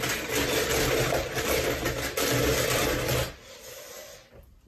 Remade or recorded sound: recorded